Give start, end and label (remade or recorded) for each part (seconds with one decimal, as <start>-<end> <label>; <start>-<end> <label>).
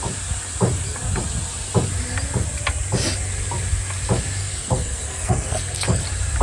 0.0-4.4 recorded; 4.4-6.0 remade; 6.0-6.4 recorded